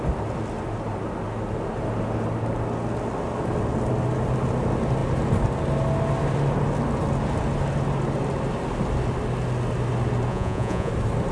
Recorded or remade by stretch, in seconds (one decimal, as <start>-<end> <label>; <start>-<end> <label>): 0.0-10.3 recorded; 10.3-10.9 remade; 10.9-11.3 recorded